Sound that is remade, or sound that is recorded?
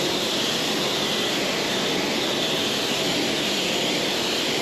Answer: recorded